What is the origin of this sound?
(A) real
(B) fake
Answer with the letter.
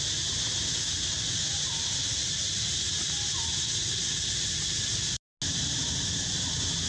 A